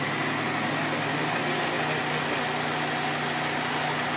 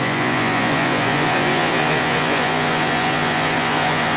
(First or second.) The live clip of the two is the first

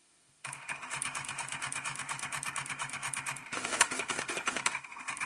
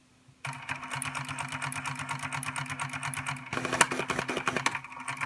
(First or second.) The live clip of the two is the second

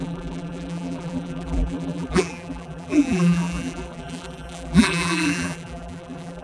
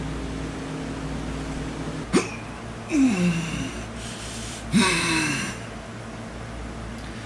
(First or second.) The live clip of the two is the second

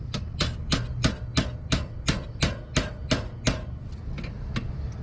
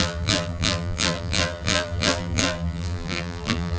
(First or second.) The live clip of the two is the first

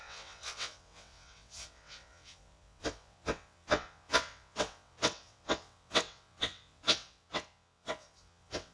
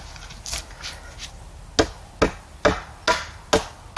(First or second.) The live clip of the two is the second